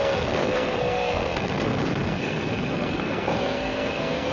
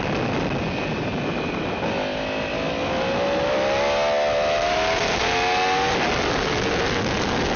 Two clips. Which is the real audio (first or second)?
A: second